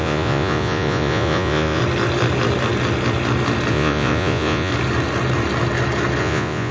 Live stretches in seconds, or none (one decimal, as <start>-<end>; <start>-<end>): 1.8-3.7; 4.7-6.2

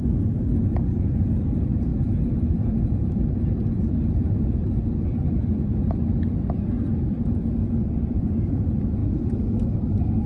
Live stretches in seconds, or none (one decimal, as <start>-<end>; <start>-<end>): 5.7-6.9